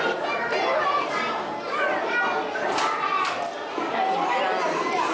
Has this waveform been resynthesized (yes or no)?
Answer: no